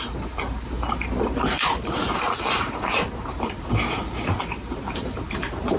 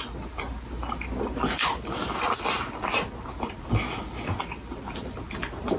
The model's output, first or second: first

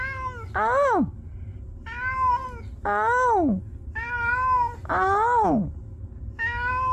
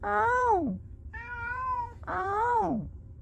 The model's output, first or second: second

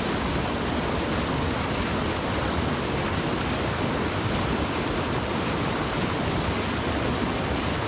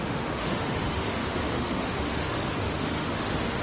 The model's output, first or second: second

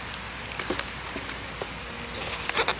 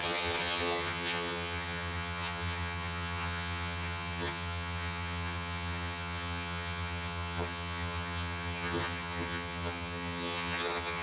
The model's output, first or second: second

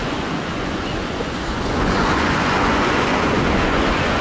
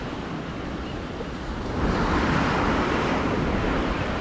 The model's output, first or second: first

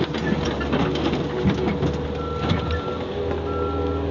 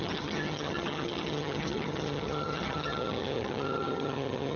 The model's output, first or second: second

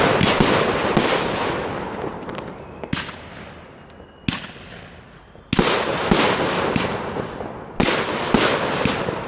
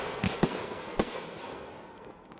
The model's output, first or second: second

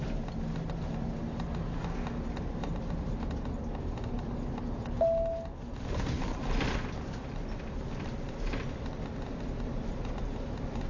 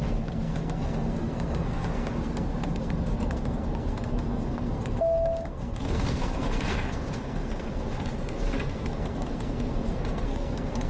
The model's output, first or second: second